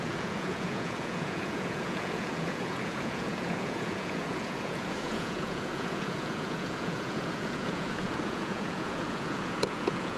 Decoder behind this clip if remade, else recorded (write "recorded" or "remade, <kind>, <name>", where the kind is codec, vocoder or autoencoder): remade, vocoder, Vocos